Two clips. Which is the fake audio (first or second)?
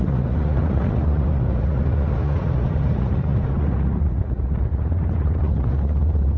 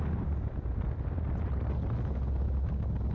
first